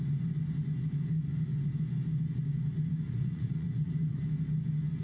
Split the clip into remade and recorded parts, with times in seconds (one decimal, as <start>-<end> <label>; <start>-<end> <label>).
0.0-2.7 recorded; 2.7-4.2 remade; 4.2-5.0 recorded